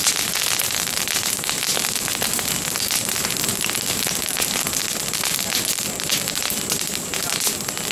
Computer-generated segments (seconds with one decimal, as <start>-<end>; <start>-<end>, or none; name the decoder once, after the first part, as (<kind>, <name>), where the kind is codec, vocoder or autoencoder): none